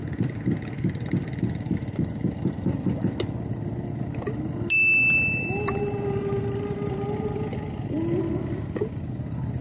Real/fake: real